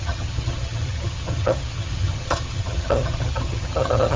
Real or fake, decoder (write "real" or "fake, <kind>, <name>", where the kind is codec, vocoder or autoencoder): fake, vocoder, HiFi-GAN